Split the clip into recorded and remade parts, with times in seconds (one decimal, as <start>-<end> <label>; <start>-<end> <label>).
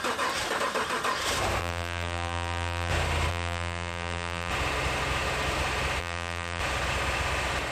0.0-1.6 recorded; 1.6-2.9 remade; 2.9-3.3 recorded; 3.3-4.5 remade; 4.5-6.0 recorded; 6.0-6.6 remade; 6.6-7.7 recorded